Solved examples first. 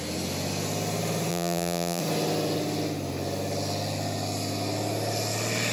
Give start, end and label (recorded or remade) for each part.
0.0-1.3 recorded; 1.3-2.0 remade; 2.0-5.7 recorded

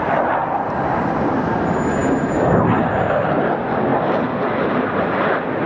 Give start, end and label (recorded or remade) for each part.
0.0-0.4 recorded; 0.4-1.6 remade; 1.6-5.7 recorded

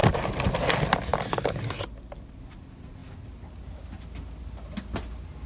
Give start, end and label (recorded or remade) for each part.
0.0-5.5 recorded

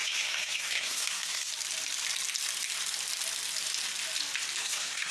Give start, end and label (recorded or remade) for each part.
0.0-1.5 remade; 1.5-4.6 recorded; 4.6-5.1 remade

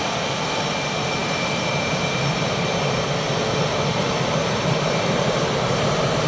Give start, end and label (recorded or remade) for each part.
0.0-4.4 recorded; 4.4-6.3 remade

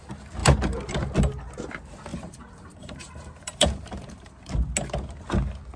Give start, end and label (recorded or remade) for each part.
0.0-2.1 recorded; 2.1-4.5 remade; 4.5-5.8 recorded